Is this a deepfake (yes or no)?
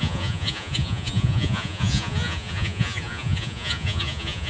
yes